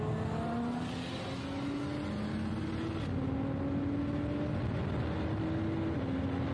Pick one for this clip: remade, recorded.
recorded